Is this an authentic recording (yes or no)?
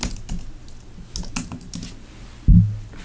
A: yes